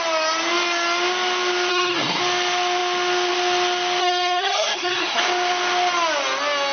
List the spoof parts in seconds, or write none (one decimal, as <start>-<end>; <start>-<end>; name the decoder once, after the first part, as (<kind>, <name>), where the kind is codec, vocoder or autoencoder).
1.7-2.2 (codec, SNAC); 4.0-5.2